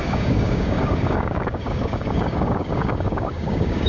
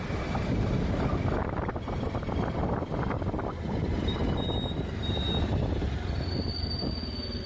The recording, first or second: second